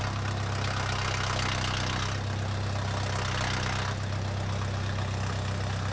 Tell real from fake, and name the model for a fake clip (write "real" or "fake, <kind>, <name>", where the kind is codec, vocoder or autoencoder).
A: real